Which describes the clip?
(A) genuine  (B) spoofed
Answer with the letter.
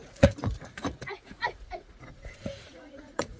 B